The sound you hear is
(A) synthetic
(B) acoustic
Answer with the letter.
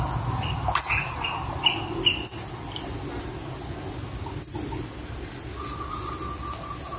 B